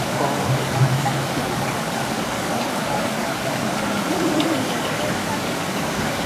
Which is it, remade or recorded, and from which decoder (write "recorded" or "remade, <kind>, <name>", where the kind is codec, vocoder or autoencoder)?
remade, codec, DAC